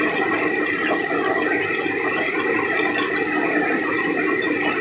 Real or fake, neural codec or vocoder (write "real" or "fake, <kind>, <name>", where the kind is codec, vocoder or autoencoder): real